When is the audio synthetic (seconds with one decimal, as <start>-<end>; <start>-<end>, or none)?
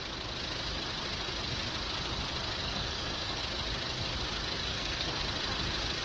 2.6-3.4; 4.7-5.2